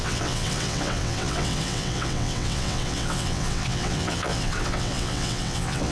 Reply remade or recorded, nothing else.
remade